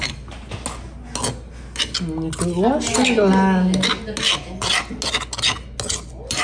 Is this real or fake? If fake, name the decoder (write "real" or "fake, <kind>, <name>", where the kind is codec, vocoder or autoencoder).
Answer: real